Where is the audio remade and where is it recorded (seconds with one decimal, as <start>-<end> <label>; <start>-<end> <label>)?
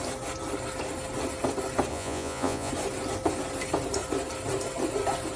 0.0-1.9 recorded; 1.9-2.7 remade; 2.7-5.4 recorded